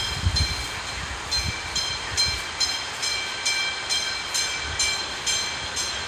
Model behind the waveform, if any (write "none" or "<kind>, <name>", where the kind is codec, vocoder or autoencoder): none